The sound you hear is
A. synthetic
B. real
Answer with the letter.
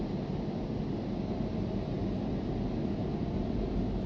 B